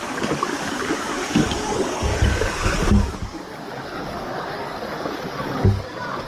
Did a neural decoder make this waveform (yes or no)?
yes